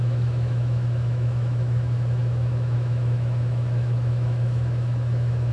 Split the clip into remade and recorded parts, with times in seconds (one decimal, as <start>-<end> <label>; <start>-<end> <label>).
0.0-5.5 remade